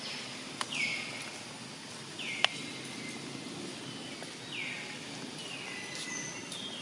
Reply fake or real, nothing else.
real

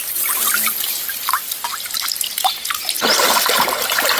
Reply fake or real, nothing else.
real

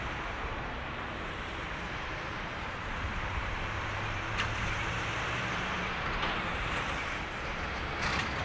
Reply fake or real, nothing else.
fake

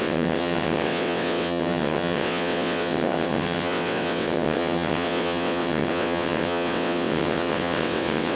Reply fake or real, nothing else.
fake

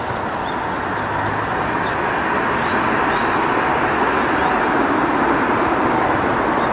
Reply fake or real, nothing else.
real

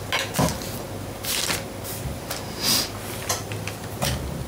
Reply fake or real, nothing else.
real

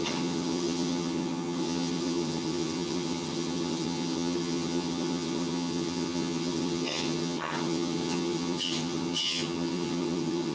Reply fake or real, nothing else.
fake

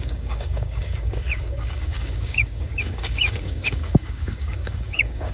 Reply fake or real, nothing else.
fake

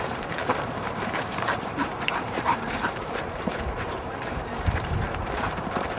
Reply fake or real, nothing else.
fake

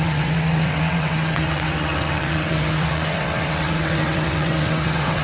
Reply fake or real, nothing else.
fake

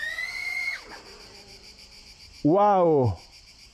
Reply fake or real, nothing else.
fake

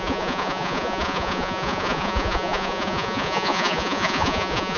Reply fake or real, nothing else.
fake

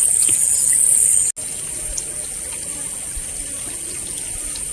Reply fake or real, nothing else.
real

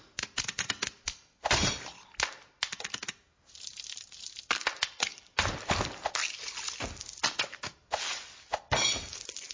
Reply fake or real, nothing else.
real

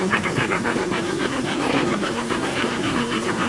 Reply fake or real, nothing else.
fake